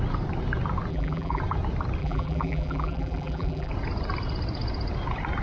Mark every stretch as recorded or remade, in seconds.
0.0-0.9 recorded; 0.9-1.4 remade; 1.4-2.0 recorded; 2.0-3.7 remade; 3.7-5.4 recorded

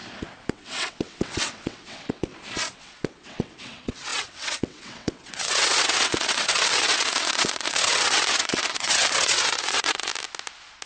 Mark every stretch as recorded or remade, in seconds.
0.0-0.5 recorded; 0.5-2.3 remade; 2.3-2.8 recorded; 2.8-10.1 remade; 10.1-10.9 recorded

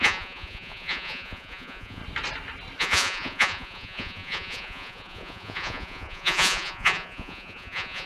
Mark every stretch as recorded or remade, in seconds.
0.0-2.0 remade; 2.0-2.8 recorded; 2.8-8.1 remade

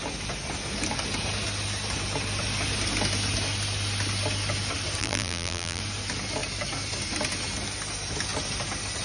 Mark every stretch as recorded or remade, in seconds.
0.0-5.0 recorded; 5.0-5.8 remade; 5.8-9.0 recorded

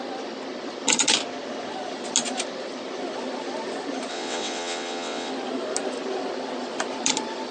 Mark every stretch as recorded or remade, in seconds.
0.0-4.1 recorded; 4.1-5.3 remade; 5.3-7.5 recorded

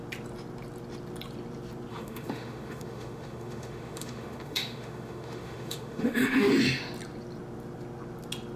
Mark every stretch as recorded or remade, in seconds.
0.0-1.9 recorded; 1.9-6.5 remade; 6.5-8.6 recorded

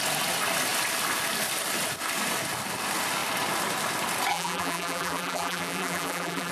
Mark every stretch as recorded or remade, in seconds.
0.0-4.3 recorded; 4.3-6.5 remade

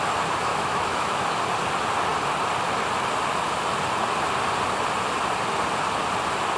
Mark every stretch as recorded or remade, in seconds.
0.0-0.5 recorded; 0.5-1.4 remade; 1.4-6.6 recorded